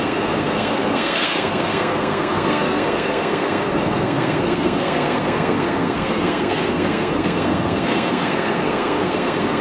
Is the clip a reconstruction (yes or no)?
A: yes